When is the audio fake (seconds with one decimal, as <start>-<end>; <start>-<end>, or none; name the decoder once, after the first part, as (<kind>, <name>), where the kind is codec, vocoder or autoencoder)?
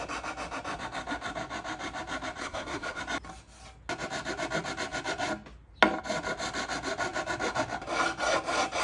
2.4-3.0 (codec, SNAC)